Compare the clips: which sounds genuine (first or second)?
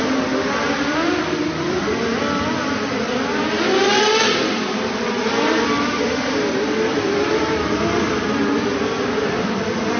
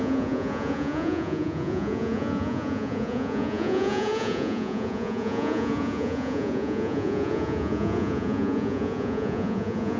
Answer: first